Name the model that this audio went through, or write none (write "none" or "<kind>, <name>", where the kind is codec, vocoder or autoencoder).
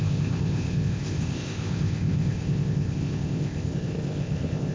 codec, ZipCodec